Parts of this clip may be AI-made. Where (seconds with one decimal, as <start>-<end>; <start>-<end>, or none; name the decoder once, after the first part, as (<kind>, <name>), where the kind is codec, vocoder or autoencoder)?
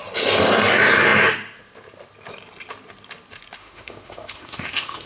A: 3.6-5.1 (autoencoder, DAC-VAE)